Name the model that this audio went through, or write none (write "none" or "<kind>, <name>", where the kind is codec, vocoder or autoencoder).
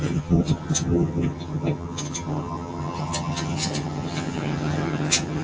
vocoder, HiFi-GAN